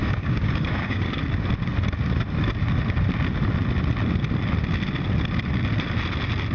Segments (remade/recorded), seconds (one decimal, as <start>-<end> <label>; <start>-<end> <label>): 0.0-1.2 remade; 1.2-6.5 recorded